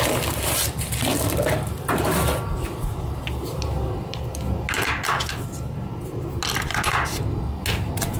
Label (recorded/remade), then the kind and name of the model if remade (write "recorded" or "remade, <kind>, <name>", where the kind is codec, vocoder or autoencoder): recorded